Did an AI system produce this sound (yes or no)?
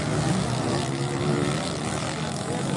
no